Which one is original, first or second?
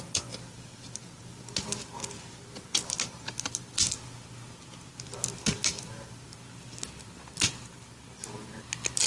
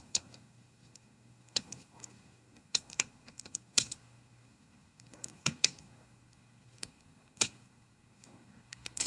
first